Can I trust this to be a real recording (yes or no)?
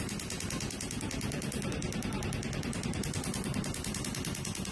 yes